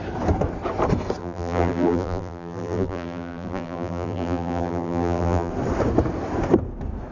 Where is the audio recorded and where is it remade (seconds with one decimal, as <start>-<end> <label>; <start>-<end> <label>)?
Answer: 0.0-1.2 recorded; 1.2-5.5 remade; 5.5-7.1 recorded